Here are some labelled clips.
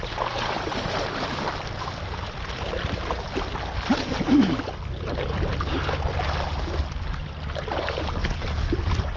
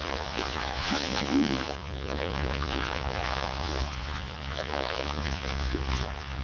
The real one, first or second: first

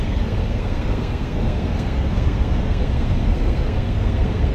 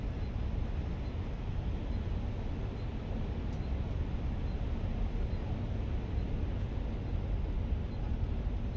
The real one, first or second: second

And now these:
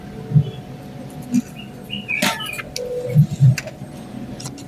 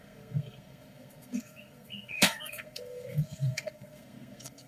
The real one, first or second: first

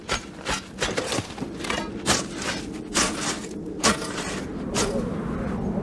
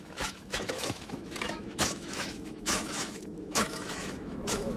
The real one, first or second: first